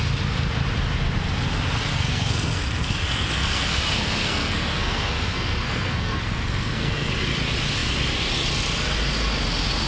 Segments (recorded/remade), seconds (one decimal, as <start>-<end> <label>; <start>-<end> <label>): 0.0-1.9 recorded; 1.9-7.1 remade; 7.1-9.9 recorded